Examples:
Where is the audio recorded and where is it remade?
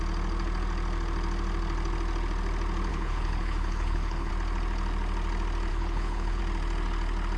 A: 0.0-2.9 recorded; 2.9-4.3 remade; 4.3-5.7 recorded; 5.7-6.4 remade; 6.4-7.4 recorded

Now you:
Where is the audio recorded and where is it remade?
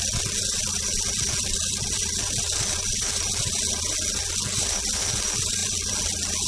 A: 0.0-6.5 recorded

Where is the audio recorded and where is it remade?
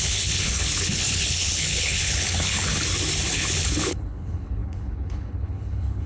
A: 0.0-2.7 remade; 2.7-3.3 recorded; 3.3-6.1 remade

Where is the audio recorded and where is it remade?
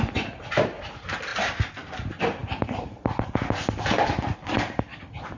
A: 0.0-5.4 recorded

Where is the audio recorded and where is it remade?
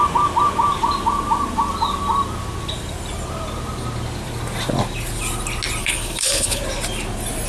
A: 0.0-5.8 recorded; 5.8-6.6 remade; 6.6-7.5 recorded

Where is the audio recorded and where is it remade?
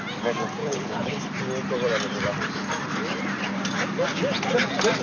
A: 0.0-0.6 recorded; 0.6-1.2 remade; 1.2-5.0 recorded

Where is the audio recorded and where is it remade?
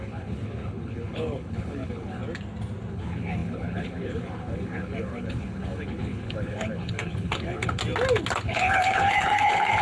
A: 0.0-2.2 remade; 2.2-2.9 recorded; 2.9-7.8 remade; 7.8-8.4 recorded; 8.4-9.8 remade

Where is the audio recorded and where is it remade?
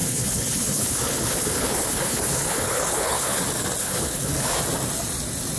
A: 0.0-3.4 remade; 3.4-3.8 recorded; 3.8-4.6 remade; 4.6-5.6 recorded